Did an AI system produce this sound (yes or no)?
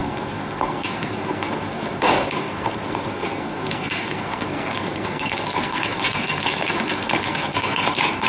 yes